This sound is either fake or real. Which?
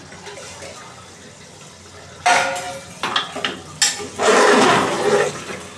real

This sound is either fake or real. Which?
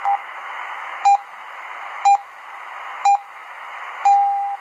fake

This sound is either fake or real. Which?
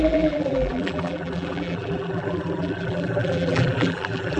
fake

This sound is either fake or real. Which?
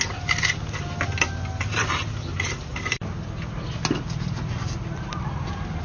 real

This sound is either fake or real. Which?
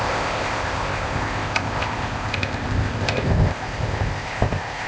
fake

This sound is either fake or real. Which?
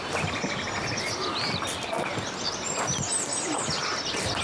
real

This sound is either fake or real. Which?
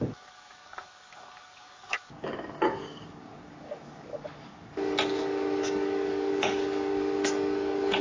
fake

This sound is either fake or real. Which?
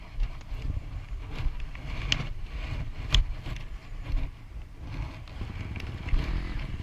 real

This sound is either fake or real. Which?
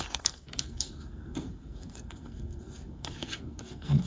fake